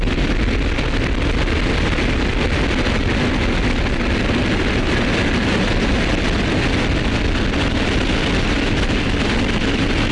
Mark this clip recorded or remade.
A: recorded